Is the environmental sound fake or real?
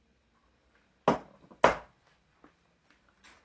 real